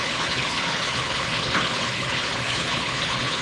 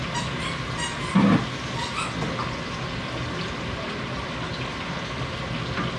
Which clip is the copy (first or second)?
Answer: first